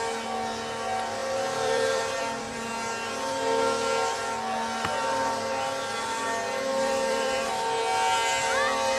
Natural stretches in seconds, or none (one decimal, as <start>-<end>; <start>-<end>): 0.0-1.2; 2.7-6.7; 7.5-9.0